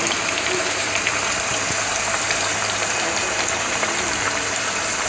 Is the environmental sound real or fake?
fake